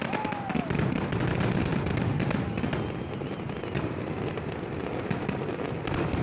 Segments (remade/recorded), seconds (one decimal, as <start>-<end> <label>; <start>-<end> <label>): 0.0-6.2 recorded